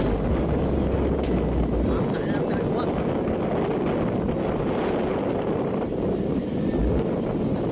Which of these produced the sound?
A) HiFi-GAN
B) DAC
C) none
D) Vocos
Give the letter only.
C